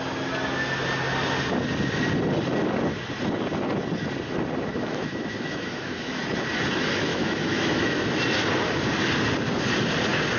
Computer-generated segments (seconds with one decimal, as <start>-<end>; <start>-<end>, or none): 4.7-6.2; 7.1-8.2